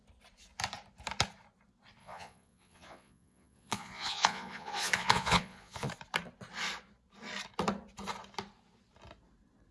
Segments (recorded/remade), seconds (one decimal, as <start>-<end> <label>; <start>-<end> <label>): 0.0-2.0 recorded; 2.0-5.9 remade; 5.9-9.7 recorded